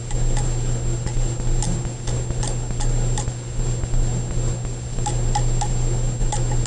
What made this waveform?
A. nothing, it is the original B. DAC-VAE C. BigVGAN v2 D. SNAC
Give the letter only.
A